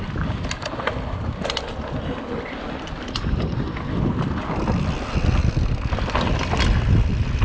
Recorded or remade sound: recorded